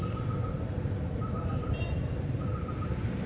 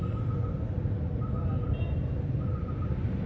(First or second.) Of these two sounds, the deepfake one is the first